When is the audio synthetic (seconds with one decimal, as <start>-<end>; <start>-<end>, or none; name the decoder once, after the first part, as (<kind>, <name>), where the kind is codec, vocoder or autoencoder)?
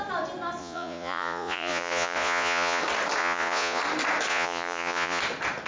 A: 0.6-2.8 (vocoder, Vocos); 3.2-3.8; 4.3-5.2